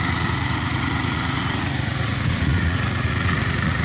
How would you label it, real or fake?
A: fake